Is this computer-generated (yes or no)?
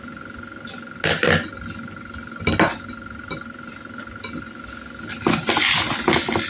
no